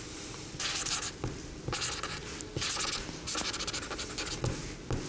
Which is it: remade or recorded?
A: recorded